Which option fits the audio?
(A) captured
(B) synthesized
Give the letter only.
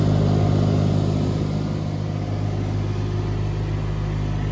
A